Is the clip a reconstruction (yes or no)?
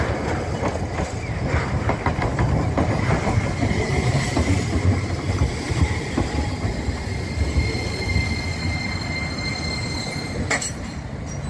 no